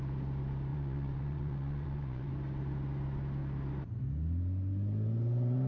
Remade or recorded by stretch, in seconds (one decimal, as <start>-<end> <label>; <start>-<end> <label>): 0.0-0.7 recorded; 0.7-2.3 remade; 2.3-5.7 recorded